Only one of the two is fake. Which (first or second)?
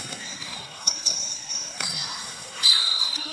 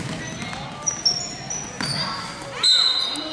first